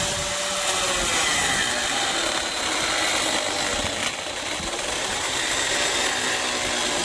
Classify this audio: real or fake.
real